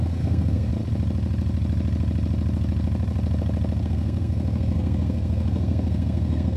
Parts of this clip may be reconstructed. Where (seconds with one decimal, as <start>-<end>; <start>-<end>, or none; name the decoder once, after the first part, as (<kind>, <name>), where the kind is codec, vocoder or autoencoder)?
0.0-0.7 (codec, SNAC); 3.8-6.6